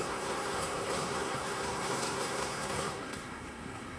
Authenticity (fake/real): fake